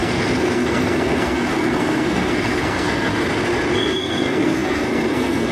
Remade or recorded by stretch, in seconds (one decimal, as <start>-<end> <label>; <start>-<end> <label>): 0.0-3.1 remade; 3.1-3.7 recorded; 3.7-5.5 remade